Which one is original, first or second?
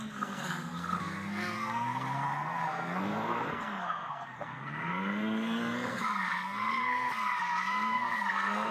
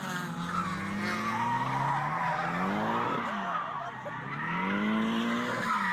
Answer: second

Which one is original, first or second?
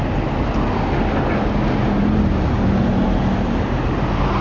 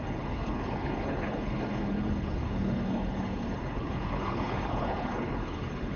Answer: first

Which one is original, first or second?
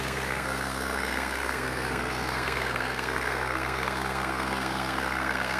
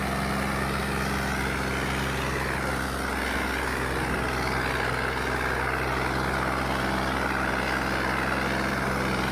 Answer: second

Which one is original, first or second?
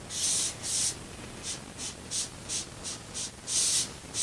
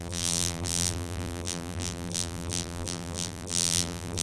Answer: first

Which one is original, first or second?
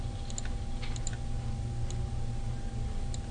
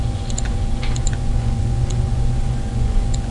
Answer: first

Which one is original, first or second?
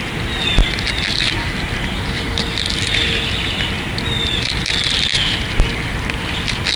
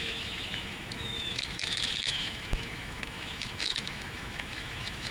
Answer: first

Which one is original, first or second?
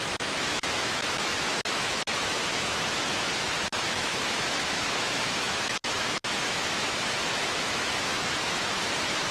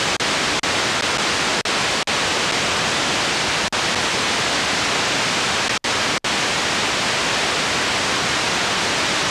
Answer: second